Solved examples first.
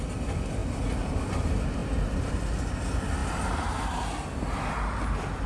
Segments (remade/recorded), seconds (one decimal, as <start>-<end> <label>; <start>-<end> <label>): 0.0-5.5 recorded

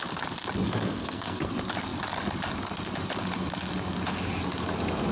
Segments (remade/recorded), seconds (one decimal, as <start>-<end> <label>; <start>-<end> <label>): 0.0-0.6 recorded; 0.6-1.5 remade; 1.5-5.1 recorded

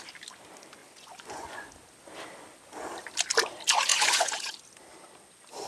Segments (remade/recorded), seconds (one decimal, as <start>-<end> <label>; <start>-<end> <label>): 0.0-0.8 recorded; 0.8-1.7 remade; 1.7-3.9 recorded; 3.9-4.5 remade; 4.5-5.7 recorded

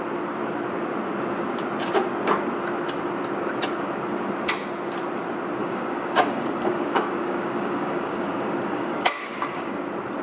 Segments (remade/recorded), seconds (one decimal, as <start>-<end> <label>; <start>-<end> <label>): 0.0-5.6 recorded; 5.6-9.7 remade; 9.7-10.2 recorded

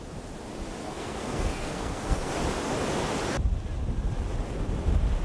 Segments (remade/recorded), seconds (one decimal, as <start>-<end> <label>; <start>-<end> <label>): 0.0-0.8 recorded; 0.8-2.3 remade; 2.3-5.2 recorded

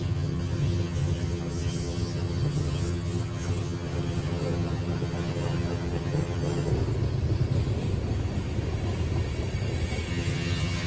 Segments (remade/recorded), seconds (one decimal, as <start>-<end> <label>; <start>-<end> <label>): 0.0-6.7 remade; 6.7-10.1 recorded; 10.1-10.9 remade

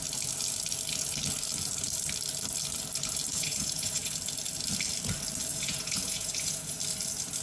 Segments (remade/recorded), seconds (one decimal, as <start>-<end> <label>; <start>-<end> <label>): 0.0-3.3 recorded; 3.3-4.1 remade; 4.1-5.5 recorded; 5.5-6.8 remade; 6.8-7.4 recorded